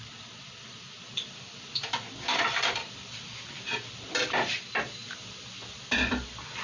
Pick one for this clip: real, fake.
fake